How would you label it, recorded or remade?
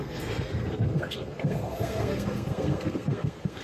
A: remade